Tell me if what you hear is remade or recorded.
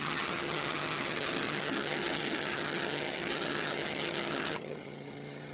remade